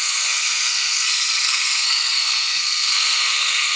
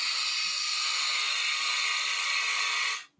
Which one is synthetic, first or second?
first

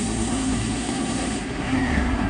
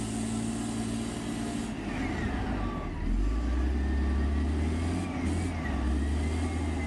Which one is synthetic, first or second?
first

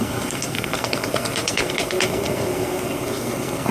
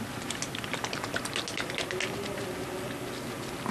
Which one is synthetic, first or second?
first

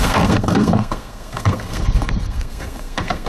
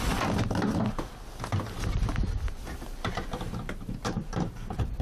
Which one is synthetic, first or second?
first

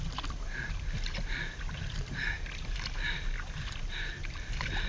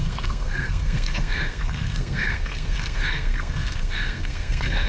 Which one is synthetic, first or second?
second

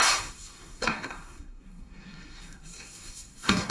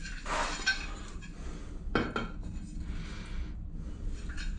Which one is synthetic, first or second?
first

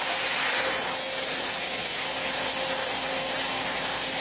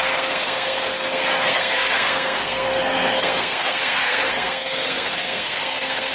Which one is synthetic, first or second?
second